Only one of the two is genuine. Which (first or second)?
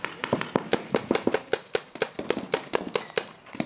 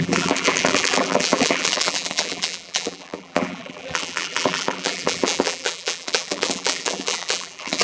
first